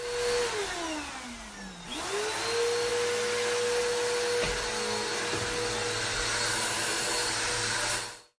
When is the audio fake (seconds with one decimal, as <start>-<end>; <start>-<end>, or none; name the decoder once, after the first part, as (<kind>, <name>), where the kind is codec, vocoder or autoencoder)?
none